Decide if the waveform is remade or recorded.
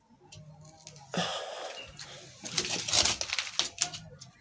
recorded